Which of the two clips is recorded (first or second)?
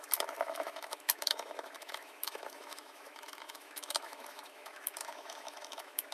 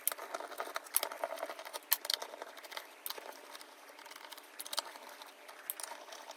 second